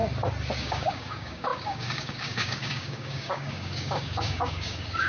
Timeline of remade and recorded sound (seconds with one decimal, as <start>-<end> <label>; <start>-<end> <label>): 0.0-0.6 recorded; 0.6-5.1 remade